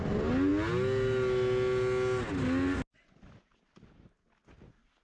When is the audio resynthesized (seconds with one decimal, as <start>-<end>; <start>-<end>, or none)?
none